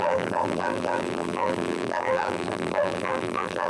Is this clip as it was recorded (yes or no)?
no